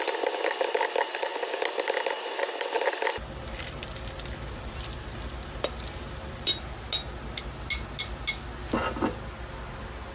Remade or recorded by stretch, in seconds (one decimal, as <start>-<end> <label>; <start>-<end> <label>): 0.0-6.5 remade; 6.5-10.1 recorded